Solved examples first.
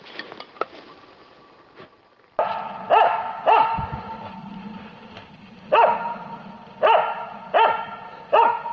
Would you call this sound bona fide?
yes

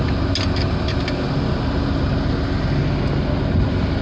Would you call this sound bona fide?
yes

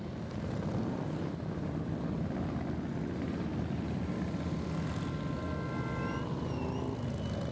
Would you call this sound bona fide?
yes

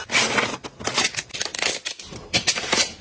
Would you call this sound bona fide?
yes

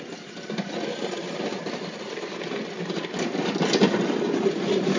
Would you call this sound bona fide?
yes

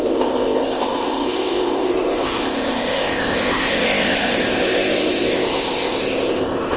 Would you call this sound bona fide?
no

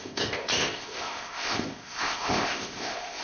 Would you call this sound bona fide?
no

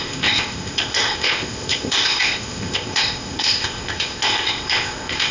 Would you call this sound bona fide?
no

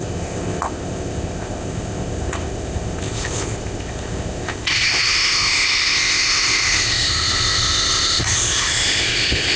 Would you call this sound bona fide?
no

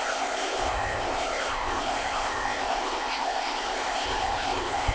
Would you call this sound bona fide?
no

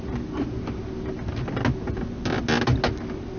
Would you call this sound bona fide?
yes